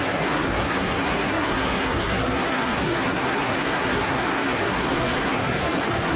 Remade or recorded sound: remade